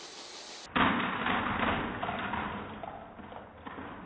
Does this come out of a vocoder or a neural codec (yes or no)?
no